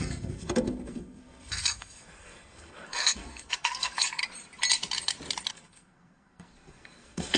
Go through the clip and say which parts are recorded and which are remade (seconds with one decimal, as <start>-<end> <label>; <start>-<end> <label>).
0.0-4.2 remade; 4.2-5.5 recorded; 5.5-7.4 remade

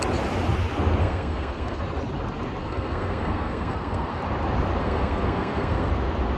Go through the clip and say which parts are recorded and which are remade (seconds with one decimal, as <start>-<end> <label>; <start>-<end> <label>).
0.0-1.0 recorded; 1.0-1.8 remade; 1.8-2.6 recorded; 2.6-4.2 remade; 4.2-4.8 recorded; 4.8-5.9 remade; 5.9-6.4 recorded

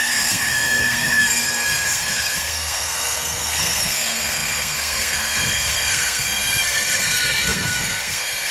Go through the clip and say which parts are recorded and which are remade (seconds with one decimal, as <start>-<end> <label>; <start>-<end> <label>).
0.0-8.5 remade

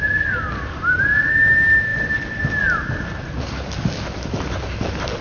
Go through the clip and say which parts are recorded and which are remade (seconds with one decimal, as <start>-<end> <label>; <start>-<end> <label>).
0.0-5.2 recorded

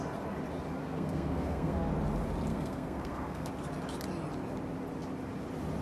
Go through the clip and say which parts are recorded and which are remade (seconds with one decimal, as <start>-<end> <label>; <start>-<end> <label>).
0.0-0.8 recorded; 0.8-1.9 remade; 1.9-2.5 recorded; 2.5-3.5 remade; 3.5-5.8 recorded

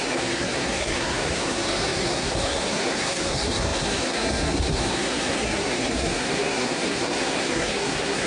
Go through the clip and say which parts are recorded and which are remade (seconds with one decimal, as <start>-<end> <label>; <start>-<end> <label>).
0.0-8.3 remade

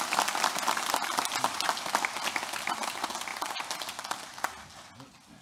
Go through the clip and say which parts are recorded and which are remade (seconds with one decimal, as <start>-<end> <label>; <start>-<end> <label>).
0.0-5.4 recorded

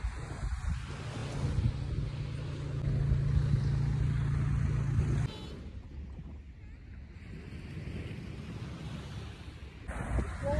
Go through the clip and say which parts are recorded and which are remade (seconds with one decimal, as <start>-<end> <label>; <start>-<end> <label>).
0.0-10.6 recorded